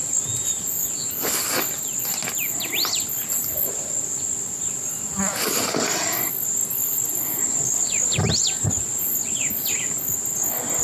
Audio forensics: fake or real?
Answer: real